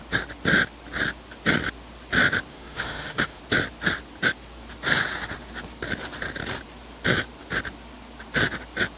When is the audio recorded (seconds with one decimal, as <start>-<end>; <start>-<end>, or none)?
0.0-2.5; 3.4-9.0

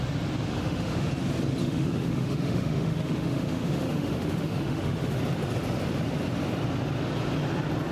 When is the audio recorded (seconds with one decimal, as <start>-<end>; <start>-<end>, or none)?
0.0-0.5; 1.1-1.6; 5.2-7.9

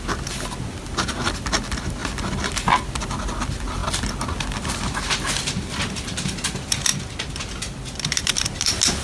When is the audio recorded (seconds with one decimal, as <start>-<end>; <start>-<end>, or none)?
0.0-9.0

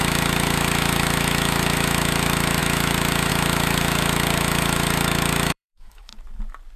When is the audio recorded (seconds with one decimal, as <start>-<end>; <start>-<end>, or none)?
6.1-6.8

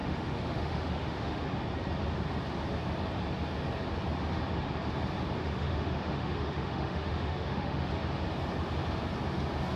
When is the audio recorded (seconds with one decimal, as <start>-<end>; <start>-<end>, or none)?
1.4-5.4; 7.9-9.8

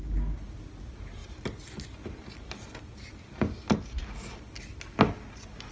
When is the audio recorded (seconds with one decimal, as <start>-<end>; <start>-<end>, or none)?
0.0-5.7

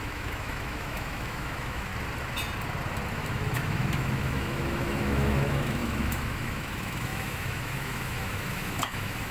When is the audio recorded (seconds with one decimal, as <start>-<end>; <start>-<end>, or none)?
1.9-3.1